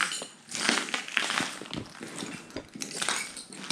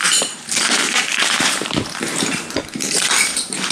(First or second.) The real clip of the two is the first